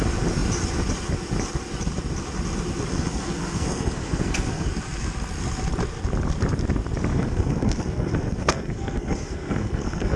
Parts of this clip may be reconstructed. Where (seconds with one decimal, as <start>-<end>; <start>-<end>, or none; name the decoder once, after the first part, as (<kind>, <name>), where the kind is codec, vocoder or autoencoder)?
2.9-4.7 (codec, SNAC); 7.1-10.2